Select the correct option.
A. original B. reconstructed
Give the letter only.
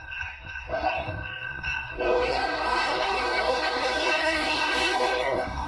B